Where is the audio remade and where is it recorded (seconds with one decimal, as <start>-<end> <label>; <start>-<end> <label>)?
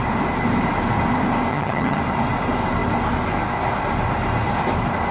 0.0-1.5 recorded; 1.5-2.0 remade; 2.0-5.1 recorded